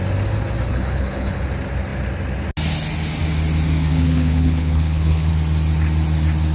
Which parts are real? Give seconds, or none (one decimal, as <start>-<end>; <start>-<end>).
0.0-0.7; 1.4-3.9; 5.3-6.5